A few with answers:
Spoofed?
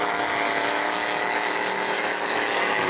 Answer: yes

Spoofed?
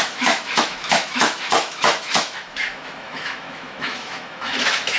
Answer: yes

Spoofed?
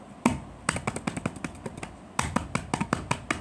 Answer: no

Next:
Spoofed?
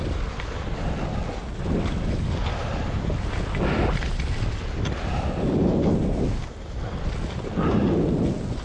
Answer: no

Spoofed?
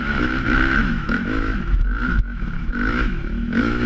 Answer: yes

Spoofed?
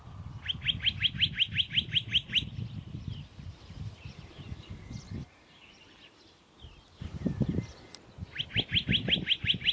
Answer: no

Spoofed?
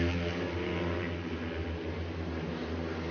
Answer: no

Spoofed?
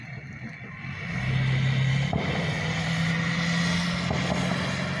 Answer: no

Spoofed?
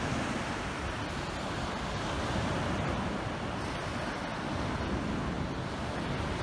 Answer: no